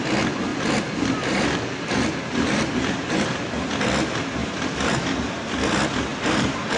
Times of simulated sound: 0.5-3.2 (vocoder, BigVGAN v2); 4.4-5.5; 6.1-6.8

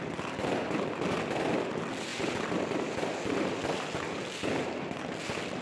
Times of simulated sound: none

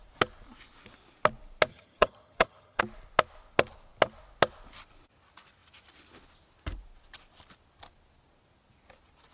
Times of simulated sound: 1.7-2.8 (vocoder, HiFi-GAN)

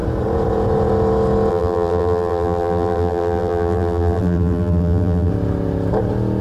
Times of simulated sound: 1.5-5.3 (vocoder, BigVGAN v2)

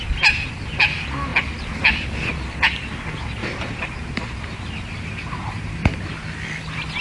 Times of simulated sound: 3.4-6.1 (vocoder, BigVGAN v2)

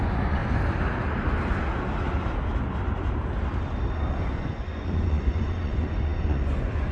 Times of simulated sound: 0.0-0.4 (vocoder, Vocos); 4.1-6.9

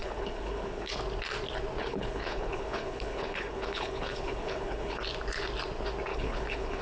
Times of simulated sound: 0.0-0.9 (codec, HILCodec); 1.8-5.0; 6.1-6.8

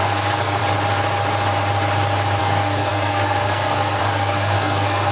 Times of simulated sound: 0.0-0.6 (codec, SNAC); 2.4-5.1